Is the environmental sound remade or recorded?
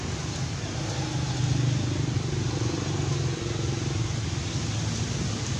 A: recorded